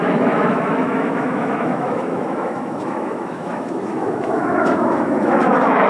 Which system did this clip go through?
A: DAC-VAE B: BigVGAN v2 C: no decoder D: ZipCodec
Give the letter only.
A